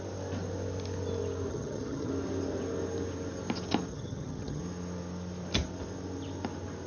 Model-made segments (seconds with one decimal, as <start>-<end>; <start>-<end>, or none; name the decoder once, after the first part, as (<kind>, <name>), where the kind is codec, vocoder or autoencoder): 1.5-2.1 (vocoder, HiFi-GAN); 3.9-4.6